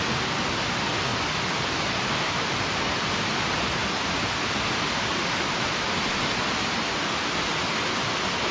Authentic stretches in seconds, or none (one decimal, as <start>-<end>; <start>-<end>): 0.0-8.5

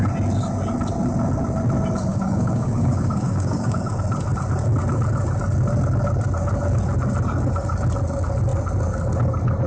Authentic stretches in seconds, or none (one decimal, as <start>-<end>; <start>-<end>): 0.0-2.1; 3.8-9.7

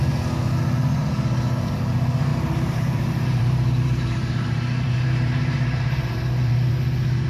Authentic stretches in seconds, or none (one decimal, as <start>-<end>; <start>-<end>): 0.0-2.3; 6.7-7.3

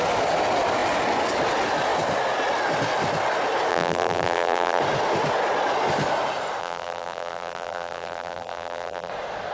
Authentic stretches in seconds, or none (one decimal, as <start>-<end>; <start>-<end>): 0.0-3.7; 4.8-6.6; 9.1-9.5